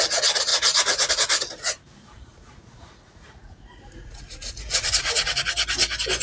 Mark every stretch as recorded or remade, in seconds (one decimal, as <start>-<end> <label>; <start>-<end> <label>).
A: 0.0-0.5 recorded; 0.5-1.1 remade; 1.1-2.3 recorded; 2.3-5.3 remade; 5.3-6.2 recorded